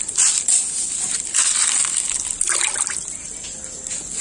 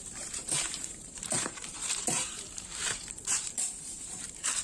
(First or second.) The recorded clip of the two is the first